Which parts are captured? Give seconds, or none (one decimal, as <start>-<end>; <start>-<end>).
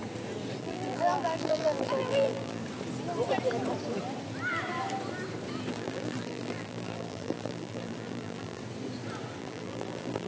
0.0-0.6; 2.6-5.7; 8.6-9.4